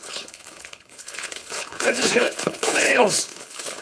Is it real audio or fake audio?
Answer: fake